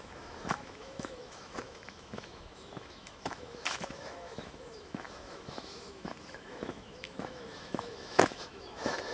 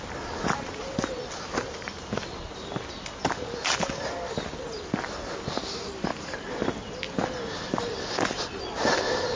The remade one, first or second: first